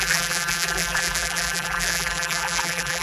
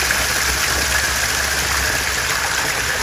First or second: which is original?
second